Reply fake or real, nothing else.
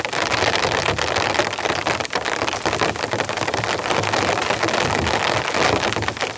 real